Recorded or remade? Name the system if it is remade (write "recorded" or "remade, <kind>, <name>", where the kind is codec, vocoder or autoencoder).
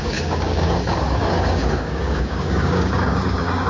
remade, codec, DAC